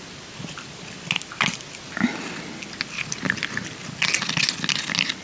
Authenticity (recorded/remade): recorded